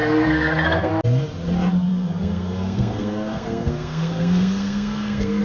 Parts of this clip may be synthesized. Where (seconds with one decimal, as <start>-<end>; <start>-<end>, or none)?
0.0-0.9; 1.9-5.4